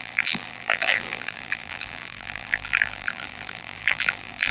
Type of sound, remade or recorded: remade